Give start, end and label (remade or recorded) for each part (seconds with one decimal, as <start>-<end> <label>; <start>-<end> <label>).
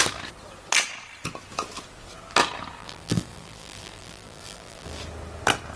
0.0-2.8 recorded; 2.8-5.0 remade; 5.0-5.8 recorded